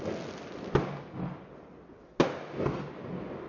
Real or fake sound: real